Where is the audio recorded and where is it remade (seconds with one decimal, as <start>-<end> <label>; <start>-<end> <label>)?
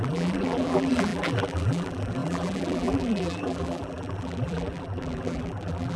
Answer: 0.0-6.0 remade